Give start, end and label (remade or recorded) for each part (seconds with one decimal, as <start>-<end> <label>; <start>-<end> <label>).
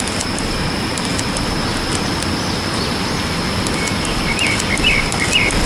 0.0-5.7 recorded